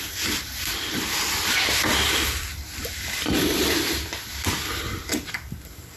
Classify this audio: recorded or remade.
remade